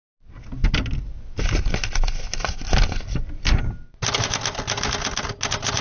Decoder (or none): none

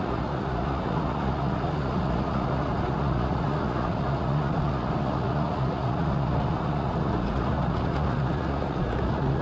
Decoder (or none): vocoder, Vocos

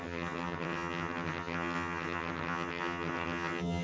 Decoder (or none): vocoder, HiFi-GAN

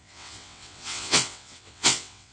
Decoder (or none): vocoder, WaveNeXt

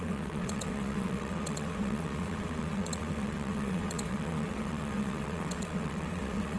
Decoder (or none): vocoder, WaveNeXt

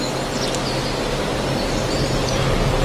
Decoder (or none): none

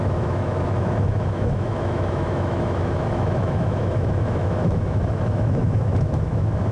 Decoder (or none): autoencoder, DAC-VAE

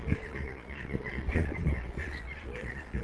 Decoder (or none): vocoder, Vocos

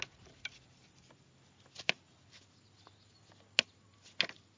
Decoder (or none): none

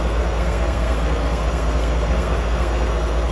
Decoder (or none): codec, SNAC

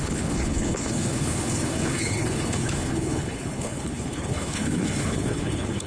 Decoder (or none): codec, HILCodec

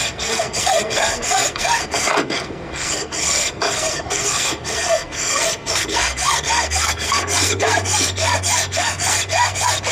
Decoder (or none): codec, SNAC